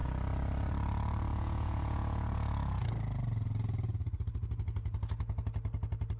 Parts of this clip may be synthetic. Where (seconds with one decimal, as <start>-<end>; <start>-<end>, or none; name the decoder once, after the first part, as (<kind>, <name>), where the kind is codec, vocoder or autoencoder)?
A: 1.3-2.9 (vocoder, Vocos)